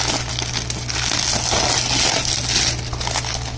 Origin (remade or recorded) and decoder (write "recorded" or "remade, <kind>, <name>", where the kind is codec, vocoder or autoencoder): recorded